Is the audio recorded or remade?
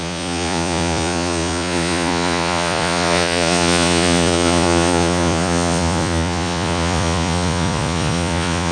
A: remade